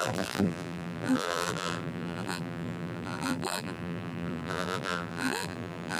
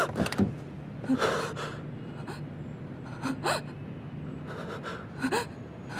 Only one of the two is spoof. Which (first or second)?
first